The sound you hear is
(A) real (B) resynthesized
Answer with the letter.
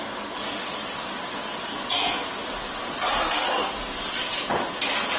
A